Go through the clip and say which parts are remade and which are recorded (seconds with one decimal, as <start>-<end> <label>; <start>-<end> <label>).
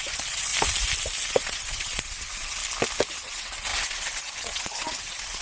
0.0-0.5 remade; 0.5-1.3 recorded; 1.3-2.6 remade; 2.6-3.1 recorded; 3.1-5.4 remade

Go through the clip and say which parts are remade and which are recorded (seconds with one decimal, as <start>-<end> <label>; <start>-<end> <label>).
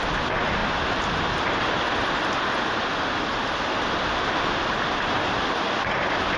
0.0-6.4 recorded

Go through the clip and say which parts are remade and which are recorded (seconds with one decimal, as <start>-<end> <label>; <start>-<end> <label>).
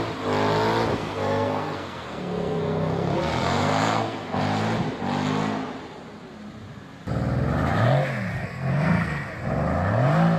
0.0-0.9 recorded; 0.9-4.4 remade; 4.4-8.3 recorded; 8.3-9.3 remade; 9.3-10.4 recorded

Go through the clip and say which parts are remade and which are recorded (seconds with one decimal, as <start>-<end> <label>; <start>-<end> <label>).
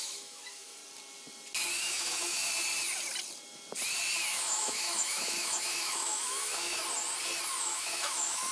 0.0-0.8 remade; 0.8-1.8 recorded; 1.8-2.5 remade; 2.5-4.3 recorded; 4.3-6.8 remade; 6.8-7.6 recorded; 7.6-8.5 remade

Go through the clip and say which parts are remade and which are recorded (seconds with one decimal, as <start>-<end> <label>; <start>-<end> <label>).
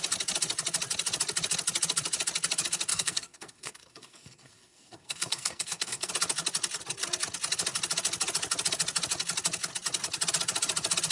0.0-2.9 recorded; 2.9-6.1 remade; 6.1-11.1 recorded